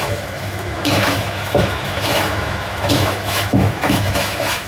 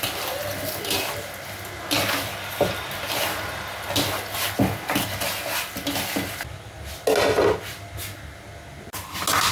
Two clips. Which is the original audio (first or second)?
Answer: second